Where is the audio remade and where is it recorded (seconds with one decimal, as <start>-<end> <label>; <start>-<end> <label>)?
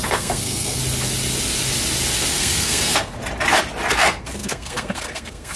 0.0-0.8 remade; 0.8-2.3 recorded; 2.3-3.2 remade; 3.2-3.9 recorded; 3.9-5.6 remade